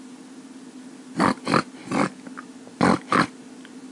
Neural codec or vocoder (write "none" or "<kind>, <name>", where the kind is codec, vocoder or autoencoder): none